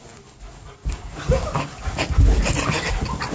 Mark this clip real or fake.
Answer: real